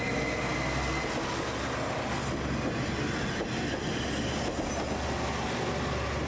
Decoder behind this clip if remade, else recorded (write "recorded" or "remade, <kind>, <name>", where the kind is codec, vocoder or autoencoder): recorded